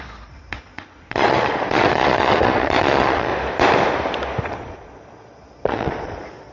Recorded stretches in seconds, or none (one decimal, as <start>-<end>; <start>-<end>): 3.3-4.4